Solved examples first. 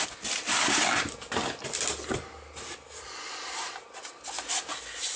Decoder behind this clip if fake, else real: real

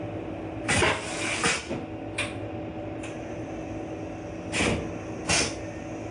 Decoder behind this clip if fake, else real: real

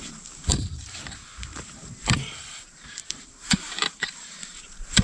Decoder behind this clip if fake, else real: fake, vocoder, BigVGAN v2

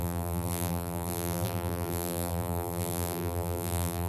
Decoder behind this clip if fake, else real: fake, vocoder, BigVGAN v2